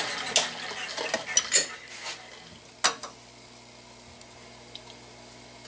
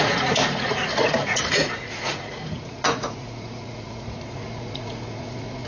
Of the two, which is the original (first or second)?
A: first